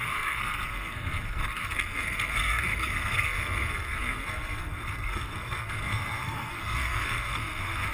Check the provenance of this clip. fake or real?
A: fake